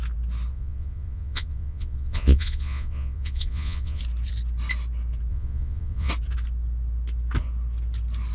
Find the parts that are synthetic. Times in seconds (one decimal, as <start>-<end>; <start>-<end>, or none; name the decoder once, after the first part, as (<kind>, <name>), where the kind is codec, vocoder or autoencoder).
0.5-4.0 (vocoder, Vocos); 5.3-6.1